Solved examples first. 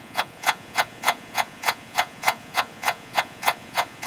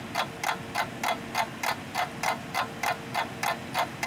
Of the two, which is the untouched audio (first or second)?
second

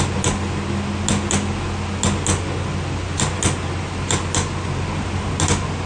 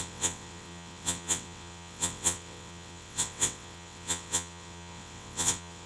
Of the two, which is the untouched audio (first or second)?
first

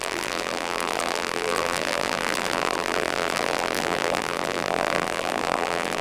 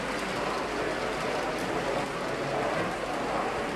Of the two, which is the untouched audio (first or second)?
second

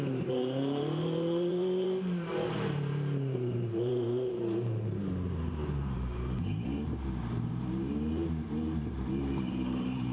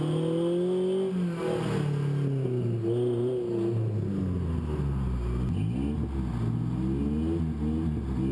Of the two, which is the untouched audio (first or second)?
second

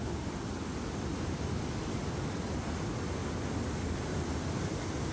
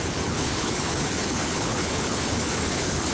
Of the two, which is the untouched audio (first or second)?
first